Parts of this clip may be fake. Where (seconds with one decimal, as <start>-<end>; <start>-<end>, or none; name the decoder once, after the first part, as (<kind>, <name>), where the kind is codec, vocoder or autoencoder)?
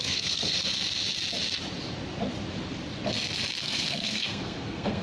0.0-0.6 (codec, SNAC); 3.6-5.0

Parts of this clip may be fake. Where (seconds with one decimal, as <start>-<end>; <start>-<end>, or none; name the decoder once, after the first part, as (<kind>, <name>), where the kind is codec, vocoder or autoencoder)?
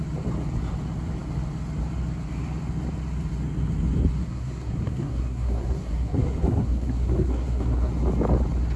4.2-7.9 (codec, SNAC)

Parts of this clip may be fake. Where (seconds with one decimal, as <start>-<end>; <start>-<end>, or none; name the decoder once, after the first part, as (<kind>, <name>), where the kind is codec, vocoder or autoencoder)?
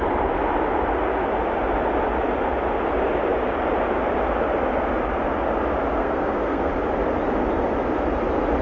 6.0-6.7 (codec, SNAC)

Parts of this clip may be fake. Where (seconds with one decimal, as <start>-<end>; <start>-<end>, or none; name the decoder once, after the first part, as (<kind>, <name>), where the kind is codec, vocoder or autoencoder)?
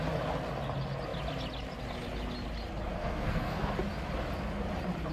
2.9-3.7 (codec, SNAC)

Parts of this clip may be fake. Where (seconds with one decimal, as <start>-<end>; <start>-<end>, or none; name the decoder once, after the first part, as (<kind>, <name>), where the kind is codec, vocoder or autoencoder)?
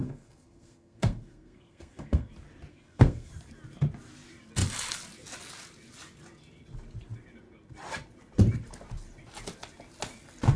0.0-2.3 (codec, SNAC); 2.7-3.3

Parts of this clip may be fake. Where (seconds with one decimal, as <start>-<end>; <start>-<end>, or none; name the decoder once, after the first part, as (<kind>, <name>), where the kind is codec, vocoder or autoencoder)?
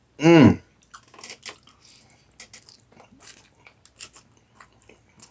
none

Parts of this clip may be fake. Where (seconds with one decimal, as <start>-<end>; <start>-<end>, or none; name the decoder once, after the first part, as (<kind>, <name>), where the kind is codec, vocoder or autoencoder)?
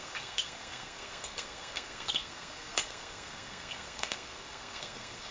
0.0-5.3 (codec, SNAC)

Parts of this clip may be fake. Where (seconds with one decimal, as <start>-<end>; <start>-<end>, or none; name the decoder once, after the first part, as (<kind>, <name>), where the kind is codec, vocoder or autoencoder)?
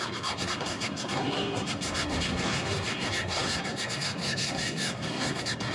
0.0-5.7 (codec, SNAC)